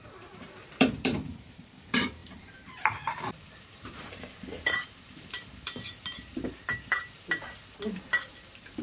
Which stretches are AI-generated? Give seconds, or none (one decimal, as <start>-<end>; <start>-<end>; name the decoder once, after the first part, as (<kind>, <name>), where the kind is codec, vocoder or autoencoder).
0.0-8.8 (vocoder, BigVGAN v2)